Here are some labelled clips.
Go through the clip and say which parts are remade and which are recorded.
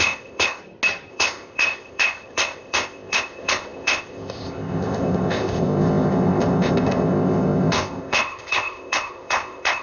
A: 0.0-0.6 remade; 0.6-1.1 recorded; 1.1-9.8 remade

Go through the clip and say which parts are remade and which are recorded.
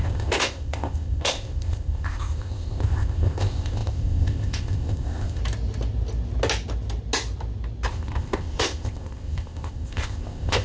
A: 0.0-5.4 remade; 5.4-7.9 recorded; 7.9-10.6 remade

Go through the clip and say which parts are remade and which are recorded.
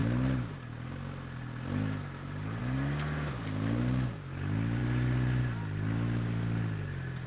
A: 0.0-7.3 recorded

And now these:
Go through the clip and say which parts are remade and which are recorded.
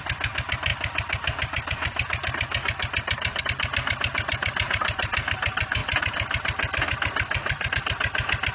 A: 0.0-8.5 recorded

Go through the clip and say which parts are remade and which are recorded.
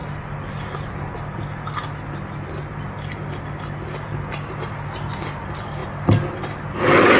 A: 0.0-7.2 recorded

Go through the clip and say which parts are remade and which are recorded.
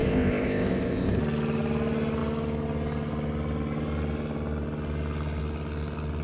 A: 0.0-1.2 remade; 1.2-6.2 recorded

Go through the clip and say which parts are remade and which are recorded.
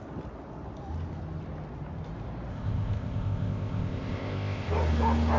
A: 0.0-2.5 recorded; 2.5-4.7 remade; 4.7-5.4 recorded